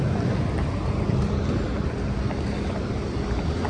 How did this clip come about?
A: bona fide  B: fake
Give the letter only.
A